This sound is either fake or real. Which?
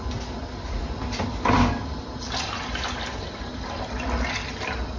real